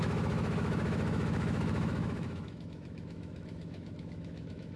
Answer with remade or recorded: remade